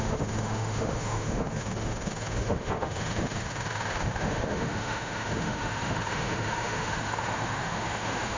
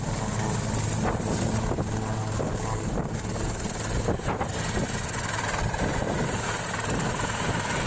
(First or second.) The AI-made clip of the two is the first